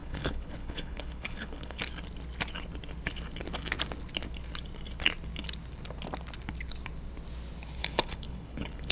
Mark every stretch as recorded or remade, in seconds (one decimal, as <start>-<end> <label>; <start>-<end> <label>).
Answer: 0.0-1.8 remade; 1.8-7.8 recorded; 7.8-8.9 remade